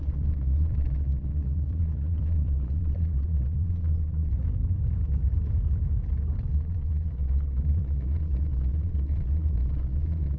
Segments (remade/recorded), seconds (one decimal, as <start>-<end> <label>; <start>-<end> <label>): 0.0-4.3 remade; 4.3-6.5 recorded; 6.5-10.4 remade